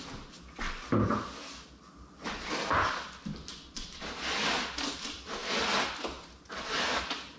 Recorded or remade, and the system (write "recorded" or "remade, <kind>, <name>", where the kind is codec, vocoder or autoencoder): recorded